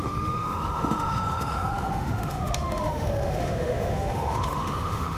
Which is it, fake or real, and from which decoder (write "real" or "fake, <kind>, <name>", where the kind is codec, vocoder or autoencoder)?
fake, autoencoder, DAC-VAE